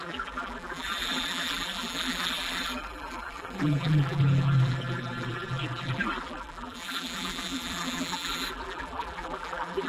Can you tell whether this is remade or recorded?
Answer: remade